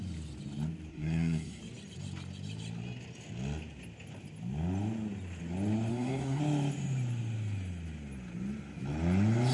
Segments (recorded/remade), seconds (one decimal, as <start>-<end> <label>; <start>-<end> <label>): 0.0-0.9 recorded; 0.9-1.6 remade; 1.6-5.9 recorded; 5.9-6.4 remade; 6.4-9.5 recorded